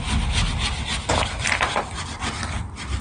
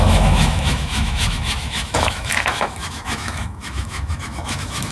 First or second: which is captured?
first